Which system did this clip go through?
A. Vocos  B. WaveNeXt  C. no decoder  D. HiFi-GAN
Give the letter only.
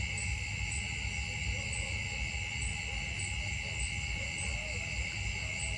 C